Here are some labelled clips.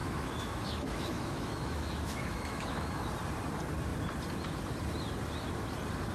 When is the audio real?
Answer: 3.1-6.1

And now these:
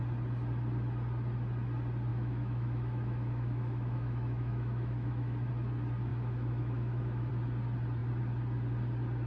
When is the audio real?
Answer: 0.0-2.1; 5.5-6.1; 7.3-9.3

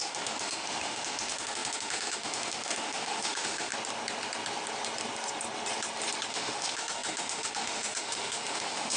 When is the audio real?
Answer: 3.7-6.3

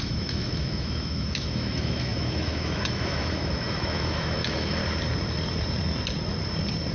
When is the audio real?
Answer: 4.8-6.9